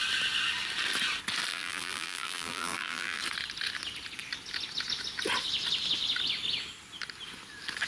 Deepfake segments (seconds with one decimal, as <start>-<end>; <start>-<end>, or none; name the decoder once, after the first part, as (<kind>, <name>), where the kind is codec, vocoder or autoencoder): 1.5-3.2 (vocoder, BigVGAN v2)